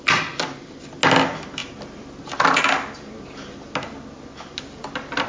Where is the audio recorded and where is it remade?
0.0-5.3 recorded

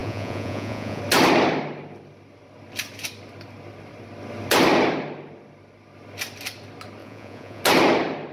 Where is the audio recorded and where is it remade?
0.0-1.0 remade; 1.0-7.0 recorded; 7.0-7.6 remade; 7.6-8.3 recorded

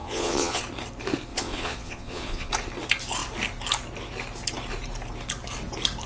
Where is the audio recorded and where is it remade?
0.0-0.6 remade; 0.6-1.3 recorded; 1.3-2.5 remade; 2.5-6.1 recorded

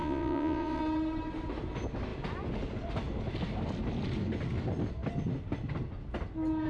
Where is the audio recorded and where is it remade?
0.0-0.8 remade; 0.8-6.7 recorded